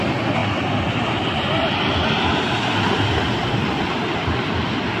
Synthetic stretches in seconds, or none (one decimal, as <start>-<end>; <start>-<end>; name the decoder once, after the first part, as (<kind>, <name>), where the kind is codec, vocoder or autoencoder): none